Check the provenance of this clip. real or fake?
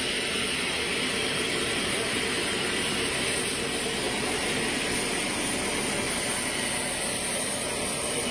real